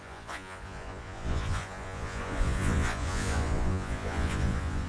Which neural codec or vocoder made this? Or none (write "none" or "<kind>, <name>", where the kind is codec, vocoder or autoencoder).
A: vocoder, Vocos